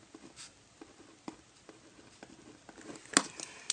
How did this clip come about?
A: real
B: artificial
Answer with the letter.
A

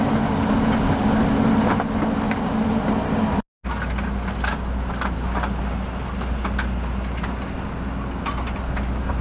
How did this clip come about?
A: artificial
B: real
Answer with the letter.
B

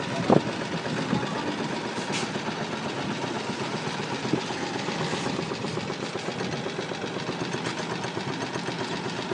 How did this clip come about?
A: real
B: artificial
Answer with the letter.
A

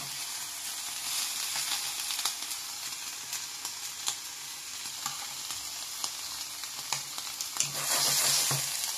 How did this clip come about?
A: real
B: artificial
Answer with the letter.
A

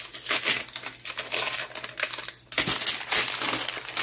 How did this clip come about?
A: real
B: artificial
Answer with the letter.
A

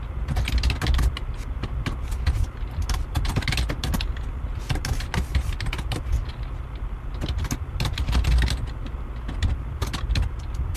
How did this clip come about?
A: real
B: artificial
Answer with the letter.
A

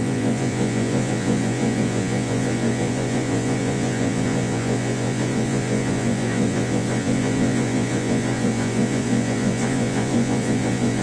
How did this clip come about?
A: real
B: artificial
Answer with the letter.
B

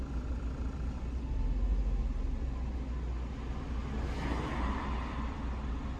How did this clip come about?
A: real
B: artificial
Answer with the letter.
A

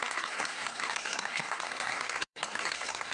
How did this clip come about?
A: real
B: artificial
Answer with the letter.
B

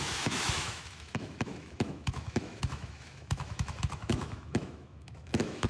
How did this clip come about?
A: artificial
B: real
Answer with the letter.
A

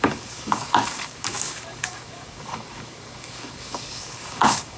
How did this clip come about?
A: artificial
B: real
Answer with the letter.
A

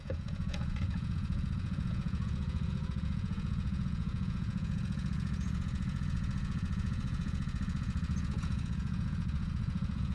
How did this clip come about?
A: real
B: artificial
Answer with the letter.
B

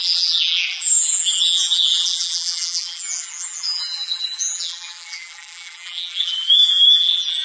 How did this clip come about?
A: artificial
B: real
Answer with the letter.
A